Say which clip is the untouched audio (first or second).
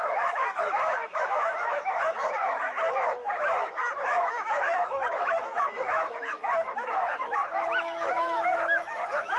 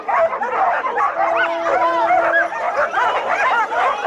second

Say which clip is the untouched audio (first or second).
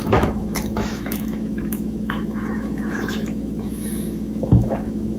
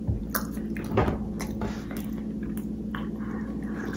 second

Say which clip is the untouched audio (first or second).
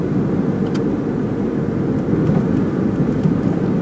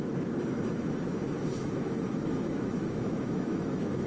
first